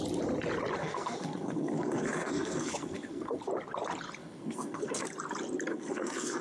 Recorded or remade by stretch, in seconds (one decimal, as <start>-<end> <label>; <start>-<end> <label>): 0.0-0.8 recorded; 0.8-3.4 remade; 3.4-4.2 recorded; 4.2-5.0 remade; 5.0-5.7 recorded; 5.7-6.4 remade